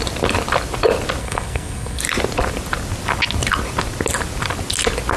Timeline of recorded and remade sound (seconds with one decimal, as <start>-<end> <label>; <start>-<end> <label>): 0.0-1.2 recorded; 1.2-2.0 remade; 2.0-5.2 recorded